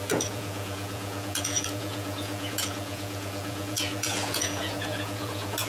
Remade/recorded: remade